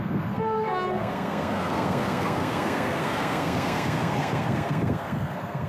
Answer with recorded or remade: remade